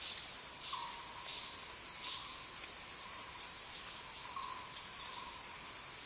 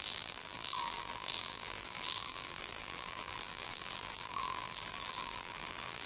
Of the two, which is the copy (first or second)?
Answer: second